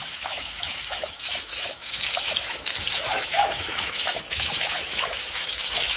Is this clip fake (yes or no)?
yes